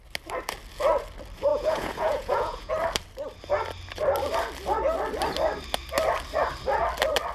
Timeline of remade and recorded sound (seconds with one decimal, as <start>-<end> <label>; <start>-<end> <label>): 0.0-1.5 recorded; 1.5-2.7 remade; 2.7-7.3 recorded